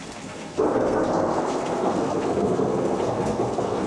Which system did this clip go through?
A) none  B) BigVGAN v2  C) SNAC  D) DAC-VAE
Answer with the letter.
C